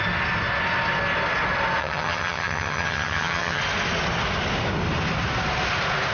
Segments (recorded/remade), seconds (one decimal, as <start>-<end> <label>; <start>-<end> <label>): 0.0-1.8 recorded; 1.8-3.6 remade; 3.6-6.1 recorded